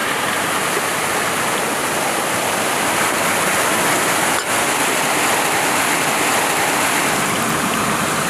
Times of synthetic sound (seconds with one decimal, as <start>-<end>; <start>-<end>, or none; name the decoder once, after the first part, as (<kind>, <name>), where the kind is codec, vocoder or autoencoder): 1.8-2.7 (vocoder, BigVGAN v2)